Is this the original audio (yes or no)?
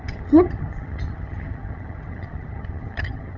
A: no